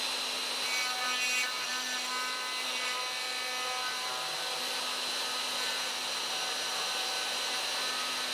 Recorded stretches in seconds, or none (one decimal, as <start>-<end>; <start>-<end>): 0.0-8.3